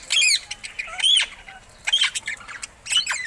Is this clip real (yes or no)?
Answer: yes